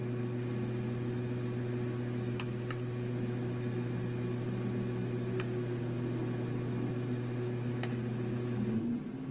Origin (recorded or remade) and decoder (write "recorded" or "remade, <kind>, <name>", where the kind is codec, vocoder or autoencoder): recorded